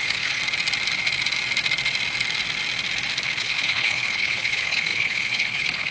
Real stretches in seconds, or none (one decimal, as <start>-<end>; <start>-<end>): 0.4-3.4